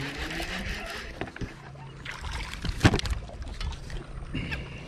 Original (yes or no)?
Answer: yes